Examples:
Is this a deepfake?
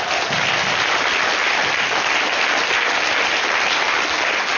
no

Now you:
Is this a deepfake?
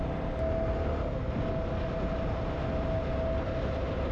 no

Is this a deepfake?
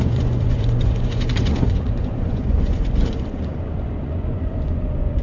yes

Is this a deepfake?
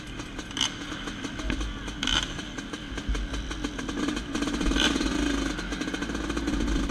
no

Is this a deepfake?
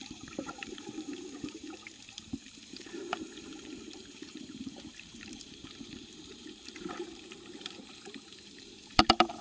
yes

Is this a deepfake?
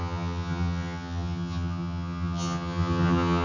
yes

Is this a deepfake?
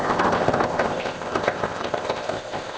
yes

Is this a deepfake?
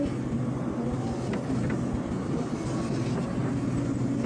no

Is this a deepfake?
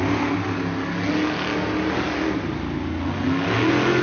no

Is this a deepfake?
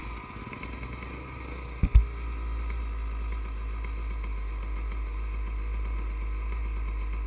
no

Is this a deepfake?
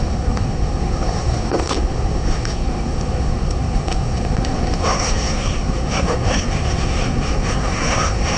yes